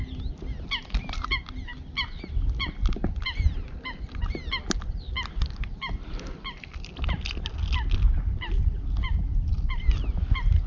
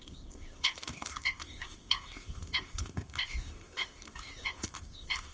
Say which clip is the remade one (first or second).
second